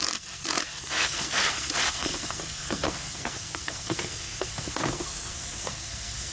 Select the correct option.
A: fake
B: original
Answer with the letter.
A